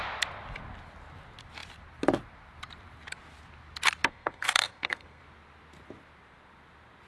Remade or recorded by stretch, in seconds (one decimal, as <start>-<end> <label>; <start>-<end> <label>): 0.0-4.1 recorded; 4.1-5.2 remade; 5.2-7.1 recorded